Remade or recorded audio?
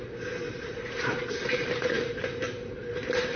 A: remade